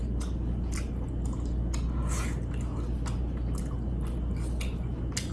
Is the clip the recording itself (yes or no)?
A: yes